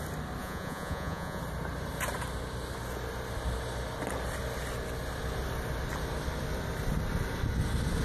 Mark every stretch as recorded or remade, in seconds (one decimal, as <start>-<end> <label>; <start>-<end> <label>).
0.0-0.4 recorded; 0.4-1.4 remade; 1.4-8.0 recorded